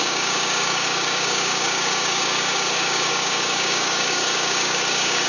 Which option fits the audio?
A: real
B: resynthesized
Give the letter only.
B